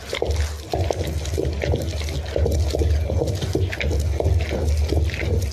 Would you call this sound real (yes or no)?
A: yes